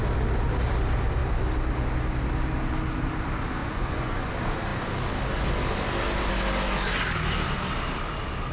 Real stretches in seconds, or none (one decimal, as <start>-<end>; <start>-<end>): 0.0-3.6; 4.3-8.5